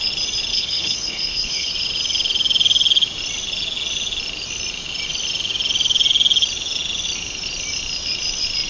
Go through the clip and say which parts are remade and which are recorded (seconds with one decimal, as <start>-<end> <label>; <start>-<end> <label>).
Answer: 0.0-0.5 recorded; 0.5-1.7 remade; 1.7-8.7 recorded